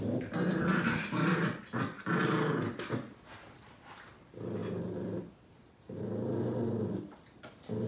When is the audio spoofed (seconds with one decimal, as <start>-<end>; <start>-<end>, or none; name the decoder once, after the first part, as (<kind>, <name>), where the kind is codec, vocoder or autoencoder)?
none